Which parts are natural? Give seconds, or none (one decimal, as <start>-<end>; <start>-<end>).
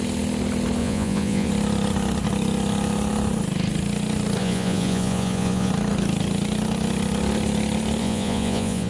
0.0-0.8; 1.5-4.4; 5.7-8.0